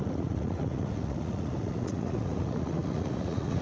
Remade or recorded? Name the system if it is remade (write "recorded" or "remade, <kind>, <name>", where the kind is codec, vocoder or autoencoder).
remade, vocoder, Vocos